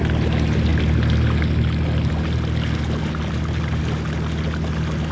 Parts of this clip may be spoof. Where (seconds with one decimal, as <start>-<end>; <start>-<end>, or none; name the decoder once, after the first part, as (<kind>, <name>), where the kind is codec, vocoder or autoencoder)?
none